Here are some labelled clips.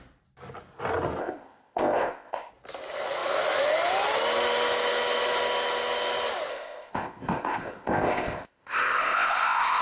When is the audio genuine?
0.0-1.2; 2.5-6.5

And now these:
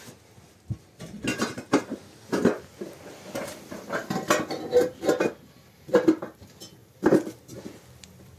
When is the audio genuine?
0.0-1.3; 1.8-6.8

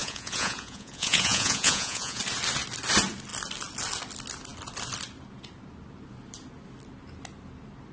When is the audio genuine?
2.2-7.9

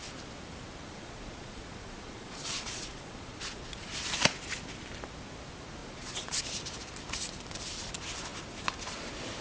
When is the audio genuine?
0.0-0.8; 3.9-5.8; 6.4-9.4